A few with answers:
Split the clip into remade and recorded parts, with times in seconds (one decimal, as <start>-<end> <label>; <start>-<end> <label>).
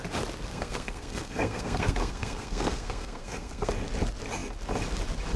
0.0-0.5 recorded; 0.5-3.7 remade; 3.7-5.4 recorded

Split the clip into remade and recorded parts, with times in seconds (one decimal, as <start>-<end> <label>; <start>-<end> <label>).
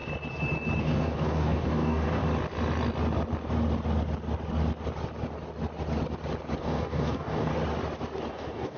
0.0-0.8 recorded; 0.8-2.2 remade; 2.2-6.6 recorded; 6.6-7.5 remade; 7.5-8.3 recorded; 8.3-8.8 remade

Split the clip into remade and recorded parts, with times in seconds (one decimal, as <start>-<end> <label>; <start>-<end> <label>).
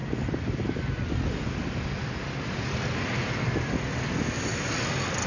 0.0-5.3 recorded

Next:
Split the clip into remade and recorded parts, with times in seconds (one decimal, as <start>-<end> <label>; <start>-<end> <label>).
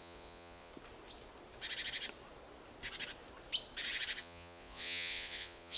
0.0-0.7 remade; 0.7-4.2 recorded; 4.2-5.8 remade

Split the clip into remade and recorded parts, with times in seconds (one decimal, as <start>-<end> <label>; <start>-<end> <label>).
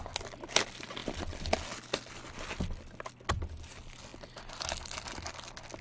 0.0-5.8 recorded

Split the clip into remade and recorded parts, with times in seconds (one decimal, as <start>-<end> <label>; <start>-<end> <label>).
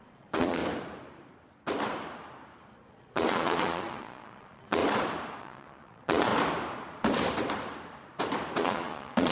0.0-0.6 remade; 0.6-2.9 recorded; 2.9-4.8 remade; 4.8-5.4 recorded; 5.4-6.3 remade; 6.3-8.6 recorded; 8.6-9.3 remade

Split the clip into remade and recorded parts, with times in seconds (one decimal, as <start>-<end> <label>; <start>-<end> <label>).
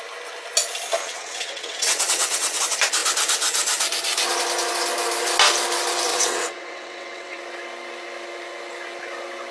0.0-1.0 recorded; 1.0-2.6 remade; 2.6-6.1 recorded; 6.1-7.4 remade; 7.4-9.5 recorded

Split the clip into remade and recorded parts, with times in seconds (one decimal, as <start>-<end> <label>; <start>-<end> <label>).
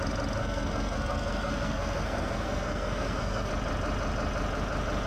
0.0-0.4 recorded; 0.4-3.5 remade; 3.5-5.1 recorded